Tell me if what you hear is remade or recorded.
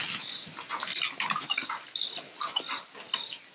recorded